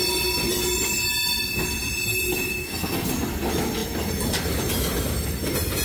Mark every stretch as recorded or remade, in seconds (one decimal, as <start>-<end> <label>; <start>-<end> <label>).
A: 0.0-2.5 recorded; 2.5-3.1 remade; 3.1-5.8 recorded